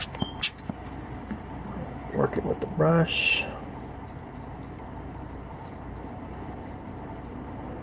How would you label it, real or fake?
real